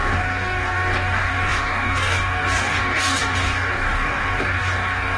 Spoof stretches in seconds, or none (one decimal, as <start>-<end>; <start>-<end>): 0.0-5.2